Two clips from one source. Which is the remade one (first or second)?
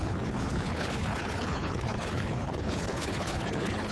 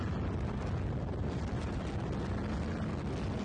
first